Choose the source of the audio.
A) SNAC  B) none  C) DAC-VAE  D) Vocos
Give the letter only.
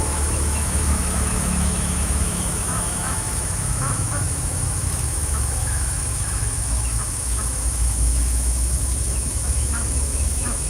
C